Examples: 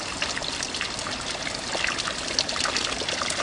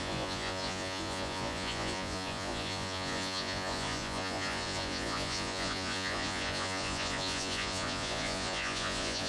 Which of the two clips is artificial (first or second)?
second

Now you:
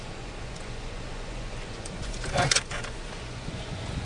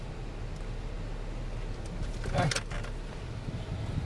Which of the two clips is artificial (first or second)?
first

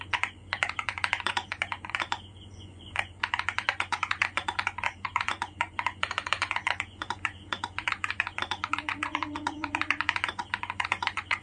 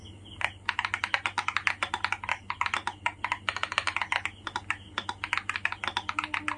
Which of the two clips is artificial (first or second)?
first